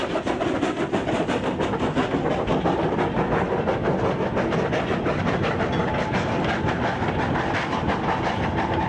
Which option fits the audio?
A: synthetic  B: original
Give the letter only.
B